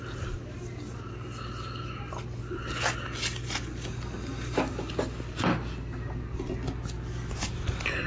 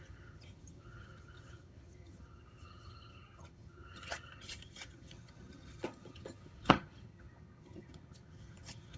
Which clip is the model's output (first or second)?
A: second